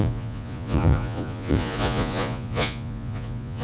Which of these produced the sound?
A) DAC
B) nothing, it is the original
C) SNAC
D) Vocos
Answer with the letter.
D